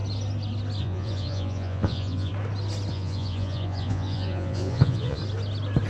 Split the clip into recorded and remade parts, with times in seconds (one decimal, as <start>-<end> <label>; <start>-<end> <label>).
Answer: 0.0-0.8 recorded; 0.8-2.3 remade; 2.3-2.9 recorded; 2.9-5.2 remade; 5.2-5.9 recorded